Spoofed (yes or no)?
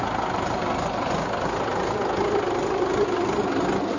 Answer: no